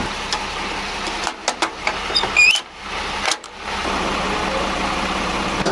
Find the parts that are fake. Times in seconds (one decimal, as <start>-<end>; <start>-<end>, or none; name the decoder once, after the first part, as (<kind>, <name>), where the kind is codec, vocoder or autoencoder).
none